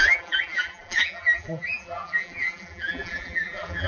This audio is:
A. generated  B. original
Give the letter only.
A